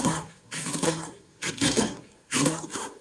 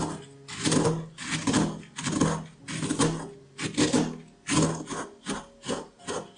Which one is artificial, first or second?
first